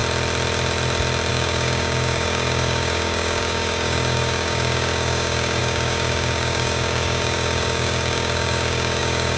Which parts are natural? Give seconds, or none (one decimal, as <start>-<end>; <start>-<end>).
0.0-1.3